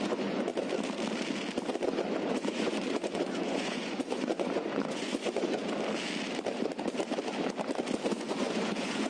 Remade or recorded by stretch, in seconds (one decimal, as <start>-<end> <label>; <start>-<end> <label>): 0.0-0.5 remade; 0.5-2.3 recorded; 2.3-5.6 remade; 5.6-8.1 recorded; 8.1-9.1 remade